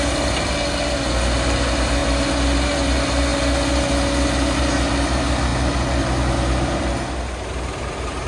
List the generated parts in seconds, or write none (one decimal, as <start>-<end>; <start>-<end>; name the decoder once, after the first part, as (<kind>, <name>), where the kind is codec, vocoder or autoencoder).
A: none